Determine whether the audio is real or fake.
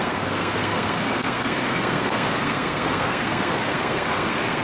fake